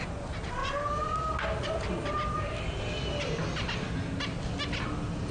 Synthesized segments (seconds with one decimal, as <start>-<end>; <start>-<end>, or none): 0.6-2.8